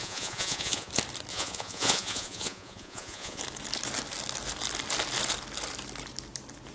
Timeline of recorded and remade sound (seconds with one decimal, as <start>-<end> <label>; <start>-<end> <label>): 0.0-0.9 remade; 0.9-1.3 recorded; 1.3-3.4 remade; 3.4-6.7 recorded